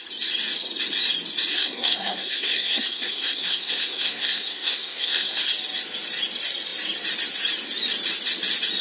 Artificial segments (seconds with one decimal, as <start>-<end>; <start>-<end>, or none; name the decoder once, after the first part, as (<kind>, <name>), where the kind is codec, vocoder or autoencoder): 1.5-5.4 (codec, SNAC)

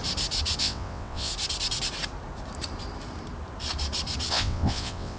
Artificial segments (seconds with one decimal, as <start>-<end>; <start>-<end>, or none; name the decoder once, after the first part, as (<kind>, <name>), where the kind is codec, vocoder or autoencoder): 0.6-1.3 (vocoder, WaveNeXt); 4.3-5.2

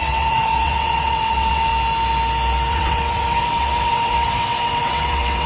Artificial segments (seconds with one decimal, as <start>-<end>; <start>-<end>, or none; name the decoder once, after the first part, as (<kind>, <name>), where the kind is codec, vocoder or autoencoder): 0.0-1.7 (vocoder, WaveNeXt); 2.7-5.5

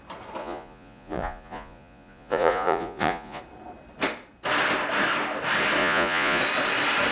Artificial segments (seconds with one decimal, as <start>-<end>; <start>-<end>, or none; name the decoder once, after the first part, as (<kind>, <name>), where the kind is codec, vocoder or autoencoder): 0.4-3.4 (vocoder, Vocos); 5.8-6.4

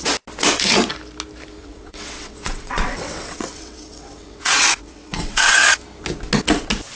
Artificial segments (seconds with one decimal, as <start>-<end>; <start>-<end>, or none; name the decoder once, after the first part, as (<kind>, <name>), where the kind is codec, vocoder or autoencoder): 1.6-5.8 (vocoder, WaveNeXt)

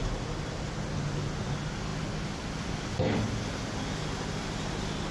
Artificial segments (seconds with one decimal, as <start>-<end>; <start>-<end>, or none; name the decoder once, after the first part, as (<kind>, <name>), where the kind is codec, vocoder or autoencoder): none